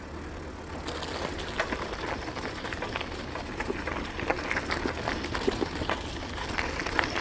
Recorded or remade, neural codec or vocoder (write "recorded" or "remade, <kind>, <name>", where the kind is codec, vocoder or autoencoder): recorded